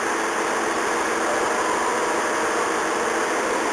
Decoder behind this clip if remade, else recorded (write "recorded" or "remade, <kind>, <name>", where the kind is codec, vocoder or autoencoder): recorded